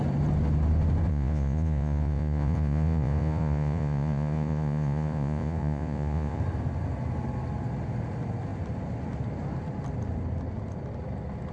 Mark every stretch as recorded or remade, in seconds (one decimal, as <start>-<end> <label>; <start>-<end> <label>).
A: 0.0-1.1 recorded; 1.1-6.4 remade; 6.4-11.5 recorded